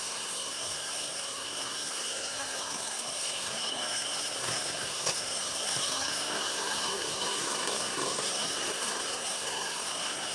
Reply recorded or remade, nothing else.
remade